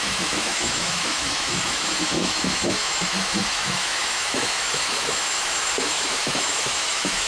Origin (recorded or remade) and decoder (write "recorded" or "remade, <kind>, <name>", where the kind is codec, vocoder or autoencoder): remade, autoencoder, DAC-VAE